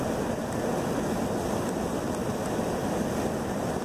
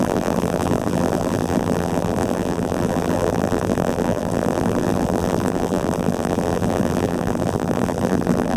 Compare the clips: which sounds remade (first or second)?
second